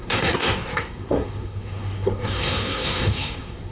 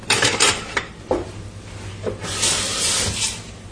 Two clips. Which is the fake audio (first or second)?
first